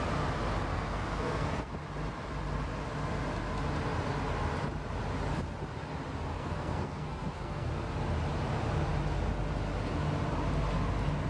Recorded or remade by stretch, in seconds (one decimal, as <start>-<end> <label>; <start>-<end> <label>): 0.0-0.7 recorded; 0.7-1.7 remade; 1.7-6.3 recorded; 6.3-7.7 remade; 7.7-11.3 recorded